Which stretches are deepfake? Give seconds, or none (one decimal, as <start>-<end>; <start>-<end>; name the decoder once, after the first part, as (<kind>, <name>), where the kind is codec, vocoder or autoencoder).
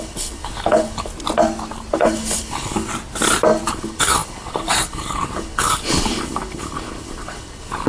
0.0-1.1 (codec, HILCodec); 1.9-2.9; 3.7-7.9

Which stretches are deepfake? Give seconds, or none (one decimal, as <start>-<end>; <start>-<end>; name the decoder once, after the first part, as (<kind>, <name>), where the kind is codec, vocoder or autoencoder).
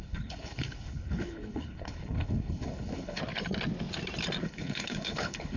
0.0-3.2 (codec, HILCodec); 4.4-5.6